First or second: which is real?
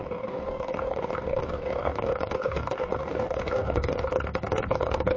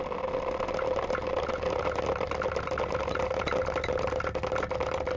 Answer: second